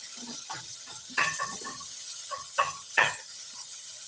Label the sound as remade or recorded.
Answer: remade